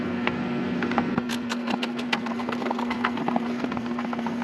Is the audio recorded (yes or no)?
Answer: no